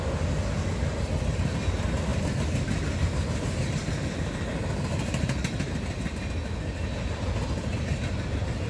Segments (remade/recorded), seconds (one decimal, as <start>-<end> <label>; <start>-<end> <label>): 0.0-8.7 recorded